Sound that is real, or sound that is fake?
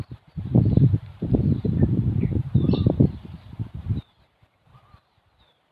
fake